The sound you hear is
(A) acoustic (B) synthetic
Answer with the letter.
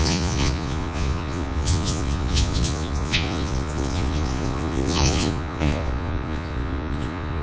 B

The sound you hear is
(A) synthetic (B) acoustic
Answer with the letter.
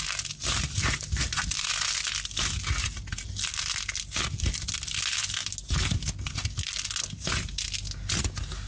B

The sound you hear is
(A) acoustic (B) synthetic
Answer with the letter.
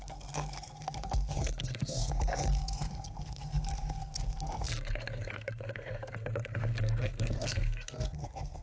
B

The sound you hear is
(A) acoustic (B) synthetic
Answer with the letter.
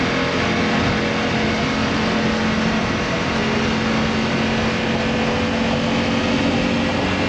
A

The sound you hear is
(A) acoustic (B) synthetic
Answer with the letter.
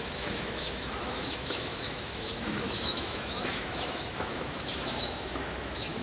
B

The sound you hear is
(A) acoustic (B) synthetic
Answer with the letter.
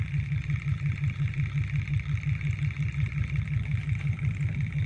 A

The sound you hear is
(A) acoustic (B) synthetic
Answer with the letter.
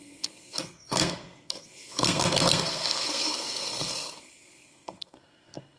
B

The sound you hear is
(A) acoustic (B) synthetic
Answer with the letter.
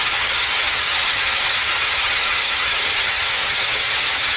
B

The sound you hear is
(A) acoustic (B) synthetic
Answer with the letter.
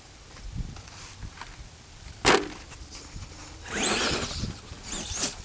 A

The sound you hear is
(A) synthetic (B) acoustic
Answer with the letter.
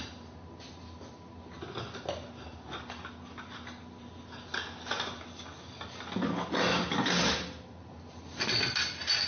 B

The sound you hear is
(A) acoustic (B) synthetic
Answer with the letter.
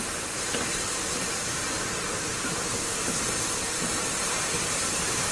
B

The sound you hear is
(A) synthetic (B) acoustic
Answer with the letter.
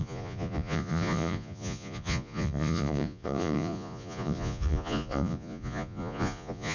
A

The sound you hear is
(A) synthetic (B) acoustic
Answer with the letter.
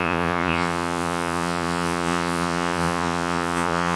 A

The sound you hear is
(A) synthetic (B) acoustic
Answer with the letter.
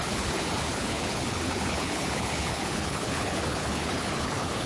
A